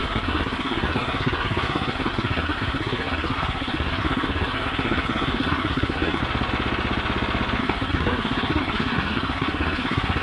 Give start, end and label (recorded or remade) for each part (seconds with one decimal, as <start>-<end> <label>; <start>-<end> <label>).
0.0-6.2 remade; 6.2-7.6 recorded; 7.6-10.2 remade